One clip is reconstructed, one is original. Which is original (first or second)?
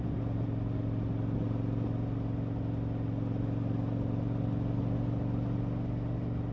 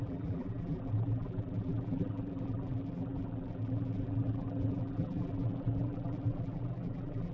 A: first